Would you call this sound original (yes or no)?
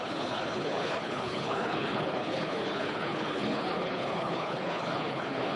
no